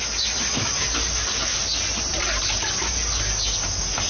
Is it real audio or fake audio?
real